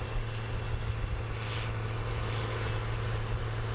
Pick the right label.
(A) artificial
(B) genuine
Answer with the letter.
B